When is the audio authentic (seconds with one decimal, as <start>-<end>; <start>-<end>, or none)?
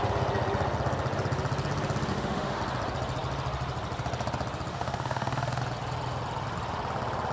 0.0-2.1; 2.6-4.7; 5.6-7.3